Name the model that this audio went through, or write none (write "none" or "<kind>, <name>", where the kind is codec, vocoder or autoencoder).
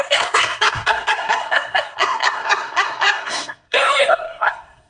codec, SNAC